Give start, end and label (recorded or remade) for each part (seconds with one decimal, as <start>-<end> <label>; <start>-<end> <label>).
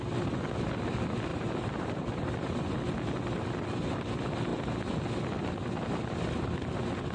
0.0-1.3 recorded; 1.3-2.3 remade; 2.3-7.1 recorded